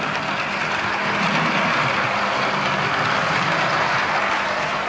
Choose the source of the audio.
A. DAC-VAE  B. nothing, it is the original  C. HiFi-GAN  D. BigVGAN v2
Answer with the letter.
B